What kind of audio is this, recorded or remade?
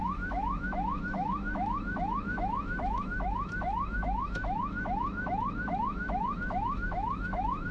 remade